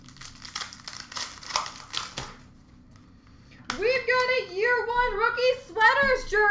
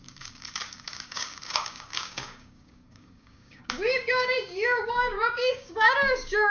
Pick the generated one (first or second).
second